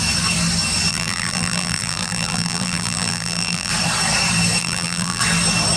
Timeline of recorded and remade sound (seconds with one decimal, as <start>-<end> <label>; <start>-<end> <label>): 0.0-0.9 recorded; 0.9-3.7 remade; 3.7-4.6 recorded; 4.6-5.2 remade; 5.2-5.8 recorded